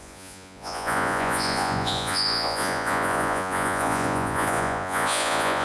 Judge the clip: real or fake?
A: fake